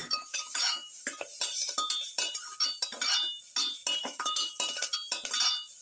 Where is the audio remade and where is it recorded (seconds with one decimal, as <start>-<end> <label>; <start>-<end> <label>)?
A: 0.0-1.1 remade; 1.1-4.0 recorded; 4.0-4.5 remade; 4.5-5.8 recorded